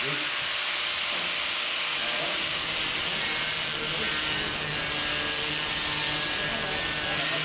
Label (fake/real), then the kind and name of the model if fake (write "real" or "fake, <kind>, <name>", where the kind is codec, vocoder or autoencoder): real